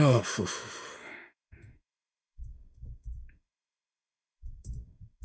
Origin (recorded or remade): remade